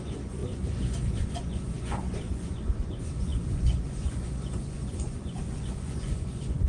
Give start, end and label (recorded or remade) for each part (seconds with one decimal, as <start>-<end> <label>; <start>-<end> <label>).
0.0-6.7 remade